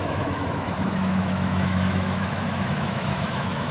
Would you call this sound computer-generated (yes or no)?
yes